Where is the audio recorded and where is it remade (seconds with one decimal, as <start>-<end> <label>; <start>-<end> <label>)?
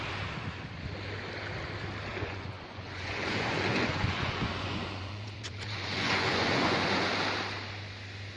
0.0-2.1 recorded; 2.1-7.1 remade; 7.1-8.4 recorded